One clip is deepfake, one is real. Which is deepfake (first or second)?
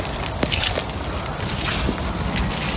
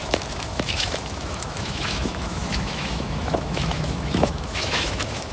second